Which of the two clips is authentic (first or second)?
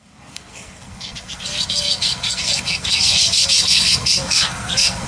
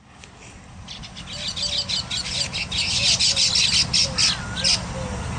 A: second